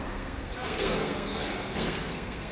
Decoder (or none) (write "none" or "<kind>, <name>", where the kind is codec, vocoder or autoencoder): codec, SNAC